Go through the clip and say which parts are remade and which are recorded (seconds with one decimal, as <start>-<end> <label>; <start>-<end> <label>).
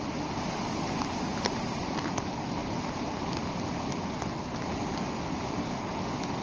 0.0-6.4 recorded